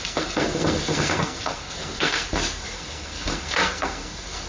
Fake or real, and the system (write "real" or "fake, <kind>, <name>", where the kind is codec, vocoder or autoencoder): fake, codec, SNAC